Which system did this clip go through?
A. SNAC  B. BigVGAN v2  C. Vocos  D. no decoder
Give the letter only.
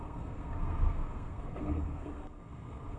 A